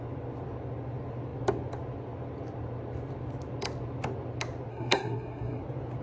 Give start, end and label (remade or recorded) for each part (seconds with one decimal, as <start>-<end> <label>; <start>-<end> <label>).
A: 0.0-4.7 recorded; 4.7-5.6 remade; 5.6-6.0 recorded